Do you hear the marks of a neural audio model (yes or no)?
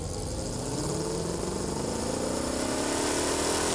no